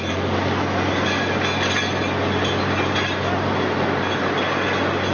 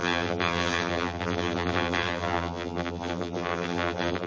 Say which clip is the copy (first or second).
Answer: second